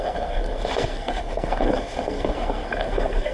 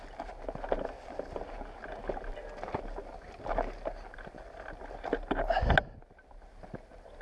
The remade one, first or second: first